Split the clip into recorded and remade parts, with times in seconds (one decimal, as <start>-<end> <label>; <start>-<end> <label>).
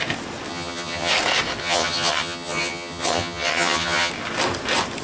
0.0-0.5 recorded; 0.5-1.1 remade; 1.1-1.6 recorded; 1.6-4.1 remade; 4.1-5.0 recorded